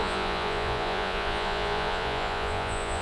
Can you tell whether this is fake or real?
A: fake